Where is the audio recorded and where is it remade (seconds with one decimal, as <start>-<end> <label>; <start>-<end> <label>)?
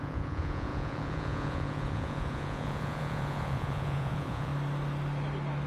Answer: 0.0-4.5 remade; 4.5-5.7 recorded